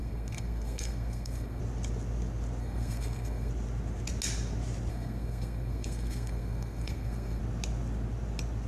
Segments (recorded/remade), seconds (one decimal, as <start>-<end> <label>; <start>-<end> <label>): 0.0-1.6 remade; 1.6-2.6 recorded; 2.6-3.5 remade; 3.5-4.9 recorded; 4.9-7.4 remade; 7.4-8.7 recorded